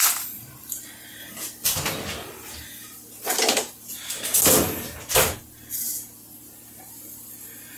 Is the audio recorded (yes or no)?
yes